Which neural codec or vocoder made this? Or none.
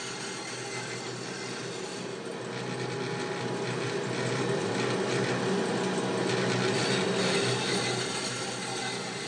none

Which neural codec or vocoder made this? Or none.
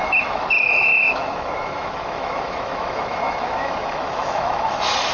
autoencoder, DAC-VAE